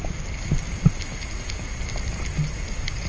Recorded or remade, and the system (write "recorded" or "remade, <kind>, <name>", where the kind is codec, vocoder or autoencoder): recorded